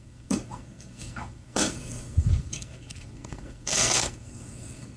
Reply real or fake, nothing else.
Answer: fake